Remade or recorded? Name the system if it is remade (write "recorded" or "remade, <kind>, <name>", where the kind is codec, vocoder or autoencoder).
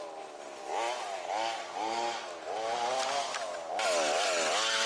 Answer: recorded